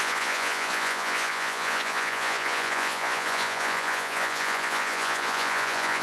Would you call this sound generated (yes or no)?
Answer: yes